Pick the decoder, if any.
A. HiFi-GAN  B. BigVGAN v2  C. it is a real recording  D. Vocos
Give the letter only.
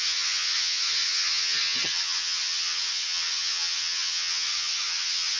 A